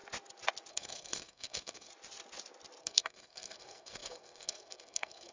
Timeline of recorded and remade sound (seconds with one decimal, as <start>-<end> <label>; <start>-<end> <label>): 0.0-0.7 recorded; 0.7-1.9 remade; 1.9-2.8 recorded; 2.8-5.3 remade